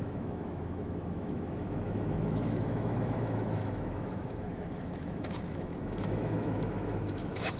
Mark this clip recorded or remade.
remade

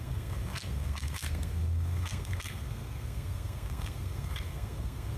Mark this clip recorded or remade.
remade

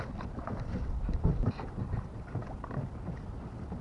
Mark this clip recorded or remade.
recorded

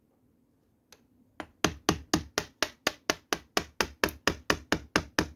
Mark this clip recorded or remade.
recorded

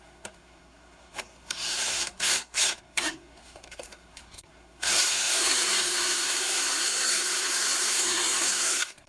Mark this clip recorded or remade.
remade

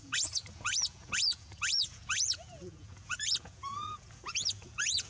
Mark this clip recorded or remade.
remade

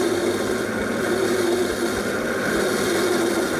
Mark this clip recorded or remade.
recorded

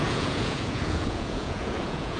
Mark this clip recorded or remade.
remade